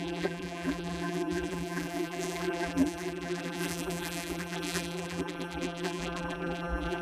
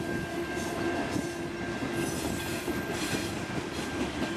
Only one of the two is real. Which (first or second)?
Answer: second